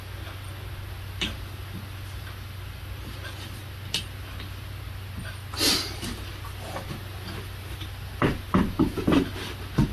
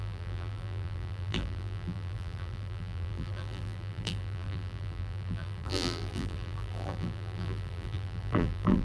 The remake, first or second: second